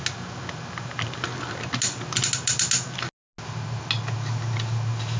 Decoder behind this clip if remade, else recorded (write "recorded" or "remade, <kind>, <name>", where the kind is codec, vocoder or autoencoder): recorded